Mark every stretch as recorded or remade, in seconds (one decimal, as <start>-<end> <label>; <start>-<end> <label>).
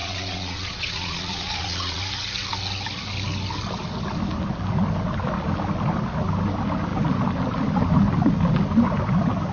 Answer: 0.0-2.0 remade; 2.0-9.5 recorded